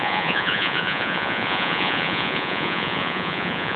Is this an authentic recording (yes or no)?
no